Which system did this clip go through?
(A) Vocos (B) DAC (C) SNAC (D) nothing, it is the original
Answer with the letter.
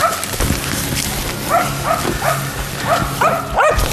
D